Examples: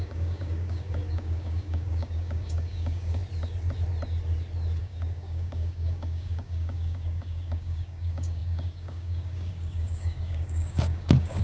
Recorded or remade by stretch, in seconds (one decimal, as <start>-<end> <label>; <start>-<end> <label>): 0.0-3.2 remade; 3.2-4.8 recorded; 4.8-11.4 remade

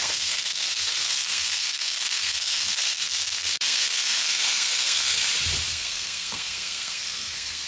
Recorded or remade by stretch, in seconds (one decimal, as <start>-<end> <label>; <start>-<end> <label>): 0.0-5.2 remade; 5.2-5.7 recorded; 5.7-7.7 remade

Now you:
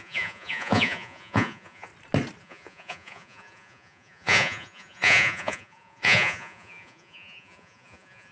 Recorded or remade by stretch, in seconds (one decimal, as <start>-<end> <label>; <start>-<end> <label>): 0.0-1.9 remade; 1.9-2.4 recorded; 2.4-8.3 remade

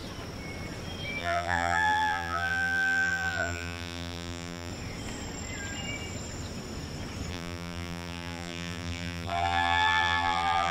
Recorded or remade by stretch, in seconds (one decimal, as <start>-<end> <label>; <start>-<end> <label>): 0.0-1.2 recorded; 1.2-4.7 remade; 4.7-7.3 recorded; 7.3-10.7 remade

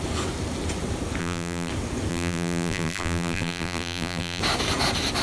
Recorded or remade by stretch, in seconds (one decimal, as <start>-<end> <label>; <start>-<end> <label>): 0.0-1.2 recorded; 1.2-1.7 remade; 1.7-2.1 recorded; 2.1-4.4 remade; 4.4-5.2 recorded

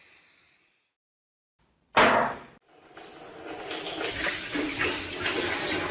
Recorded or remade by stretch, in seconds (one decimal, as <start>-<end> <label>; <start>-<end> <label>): 0.0-5.9 recorded